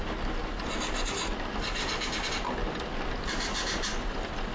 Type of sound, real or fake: real